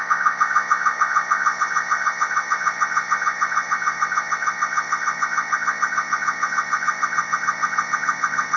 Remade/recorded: remade